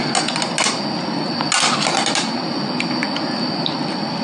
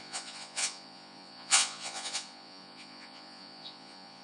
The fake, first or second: second